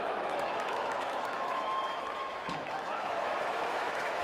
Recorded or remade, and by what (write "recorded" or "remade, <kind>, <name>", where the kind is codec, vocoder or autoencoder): remade, autoencoder, DAC-VAE